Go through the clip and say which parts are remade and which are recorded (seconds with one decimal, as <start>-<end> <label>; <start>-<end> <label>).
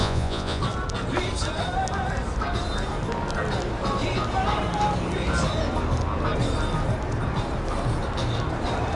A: 0.0-0.6 remade; 0.6-9.0 recorded